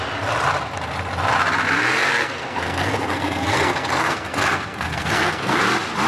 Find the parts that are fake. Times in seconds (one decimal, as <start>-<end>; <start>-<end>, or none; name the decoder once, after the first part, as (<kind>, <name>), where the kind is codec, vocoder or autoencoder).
2.1-5.6 (codec, SNAC)